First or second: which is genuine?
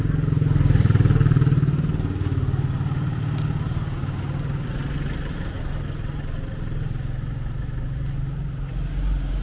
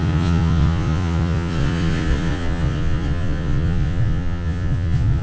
first